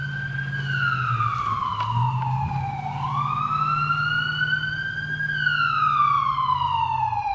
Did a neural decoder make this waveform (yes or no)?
no